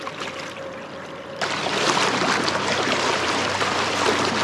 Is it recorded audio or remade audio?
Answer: remade